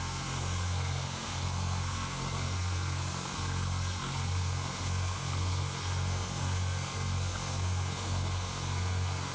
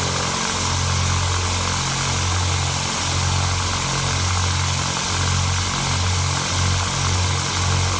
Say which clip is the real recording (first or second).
second